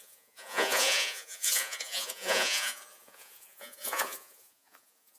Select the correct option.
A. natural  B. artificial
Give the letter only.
B